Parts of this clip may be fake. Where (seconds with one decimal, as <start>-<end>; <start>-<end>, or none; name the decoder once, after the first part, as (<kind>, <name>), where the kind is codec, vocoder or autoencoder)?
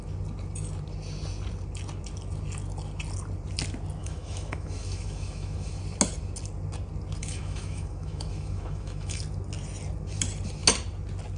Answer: 4.0-5.8 (autoencoder, DAC-VAE); 7.2-9.2